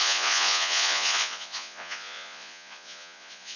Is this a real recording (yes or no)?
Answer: no